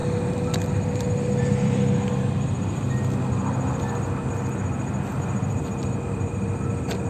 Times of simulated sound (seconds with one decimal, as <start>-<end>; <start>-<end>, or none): 0.0-2.1